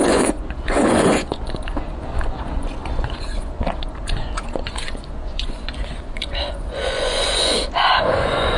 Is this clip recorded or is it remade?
remade